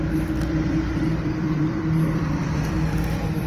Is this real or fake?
fake